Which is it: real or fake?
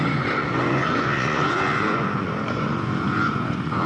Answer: fake